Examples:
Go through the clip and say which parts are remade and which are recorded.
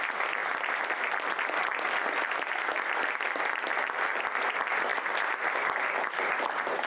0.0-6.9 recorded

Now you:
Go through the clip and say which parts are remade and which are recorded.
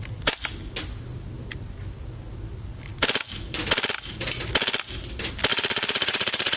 0.0-5.5 recorded; 5.5-6.6 remade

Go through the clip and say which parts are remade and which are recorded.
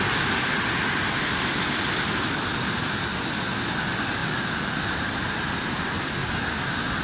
0.0-7.0 recorded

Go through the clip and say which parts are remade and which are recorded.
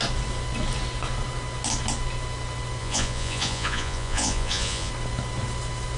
0.0-2.8 recorded; 2.8-4.9 remade; 4.9-6.0 recorded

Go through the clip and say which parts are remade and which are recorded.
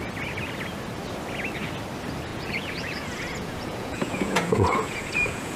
0.0-2.3 recorded; 2.3-5.6 remade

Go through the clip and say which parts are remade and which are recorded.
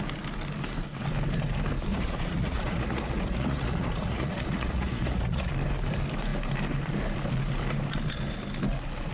0.0-1.9 recorded; 1.9-5.5 remade; 5.5-9.1 recorded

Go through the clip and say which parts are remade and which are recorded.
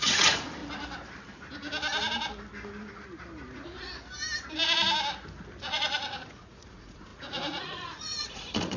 0.0-0.6 remade; 0.6-5.6 recorded; 5.6-8.8 remade